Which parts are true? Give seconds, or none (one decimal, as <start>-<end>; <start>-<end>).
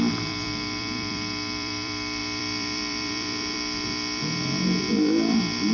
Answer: none